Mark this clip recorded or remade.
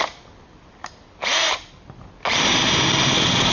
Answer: recorded